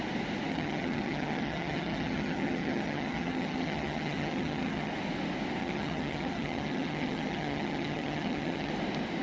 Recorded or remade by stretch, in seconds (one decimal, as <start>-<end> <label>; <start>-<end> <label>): 0.0-0.5 recorded; 0.5-4.9 remade; 4.9-5.6 recorded; 5.6-8.7 remade; 8.7-9.2 recorded